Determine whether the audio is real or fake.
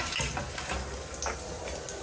real